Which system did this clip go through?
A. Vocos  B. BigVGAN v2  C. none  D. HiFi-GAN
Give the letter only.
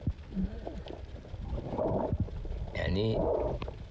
C